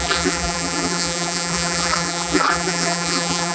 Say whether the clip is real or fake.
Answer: fake